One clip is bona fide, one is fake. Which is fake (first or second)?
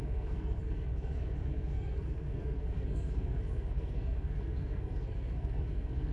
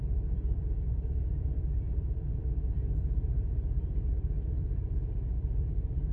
first